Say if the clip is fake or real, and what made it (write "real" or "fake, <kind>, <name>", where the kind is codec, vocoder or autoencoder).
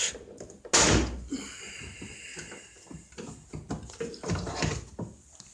real